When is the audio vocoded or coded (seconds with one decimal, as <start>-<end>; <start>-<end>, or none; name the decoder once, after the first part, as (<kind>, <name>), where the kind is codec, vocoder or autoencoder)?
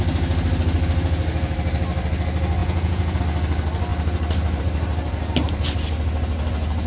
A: 2.6-3.2 (vocoder, Vocos)